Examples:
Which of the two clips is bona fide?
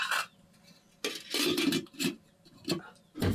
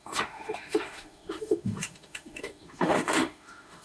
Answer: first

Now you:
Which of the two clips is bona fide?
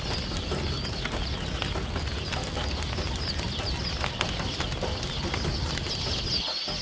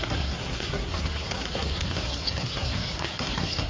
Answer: first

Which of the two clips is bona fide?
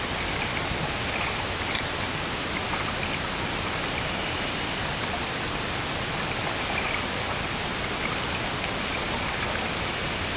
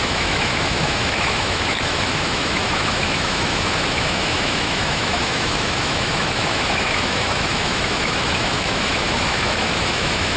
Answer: first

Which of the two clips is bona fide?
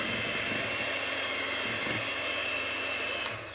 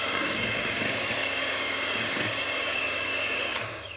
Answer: first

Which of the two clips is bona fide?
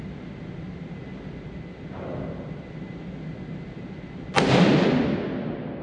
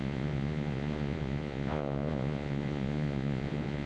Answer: first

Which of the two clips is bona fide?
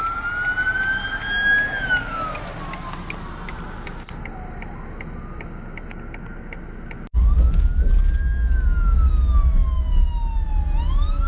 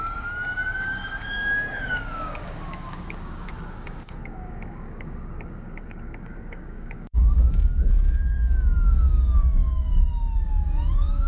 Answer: first